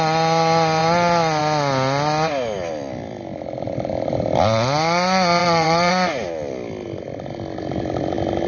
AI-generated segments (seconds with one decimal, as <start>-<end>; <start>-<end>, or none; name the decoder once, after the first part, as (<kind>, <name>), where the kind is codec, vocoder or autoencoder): 5.4-5.9 (vocoder, WaveNeXt)